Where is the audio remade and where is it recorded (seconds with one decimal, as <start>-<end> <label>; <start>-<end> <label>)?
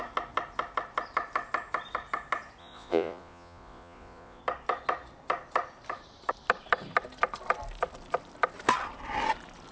0.0-2.6 recorded; 2.6-4.4 remade; 4.4-9.7 recorded